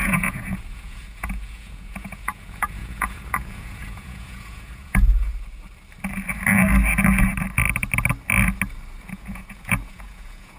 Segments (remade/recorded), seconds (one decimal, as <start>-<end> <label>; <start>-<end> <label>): 0.0-5.3 remade; 5.3-9.0 recorded; 9.0-10.6 remade